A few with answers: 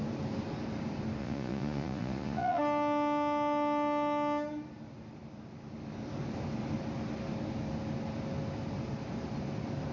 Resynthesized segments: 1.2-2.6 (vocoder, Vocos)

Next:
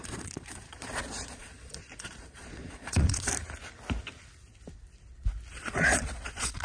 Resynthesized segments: 0.0-3.3 (vocoder, Vocos); 5.5-6.6

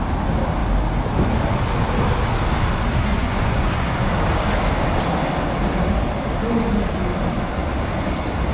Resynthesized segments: 3.1-4.1 (vocoder, Vocos)

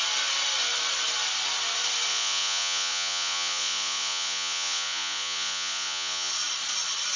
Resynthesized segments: 2.1-6.3 (vocoder, Vocos)

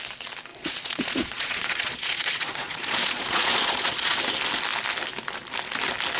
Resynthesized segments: 0.5-4.2 (vocoder, Vocos)